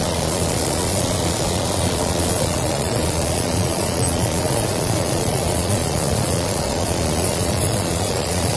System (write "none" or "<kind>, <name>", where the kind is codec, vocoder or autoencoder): vocoder, Vocos